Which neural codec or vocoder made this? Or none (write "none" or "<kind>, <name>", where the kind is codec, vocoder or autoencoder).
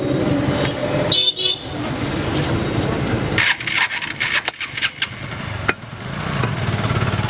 none